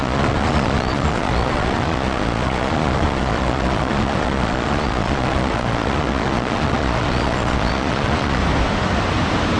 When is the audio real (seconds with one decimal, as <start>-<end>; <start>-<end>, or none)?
8.4-9.6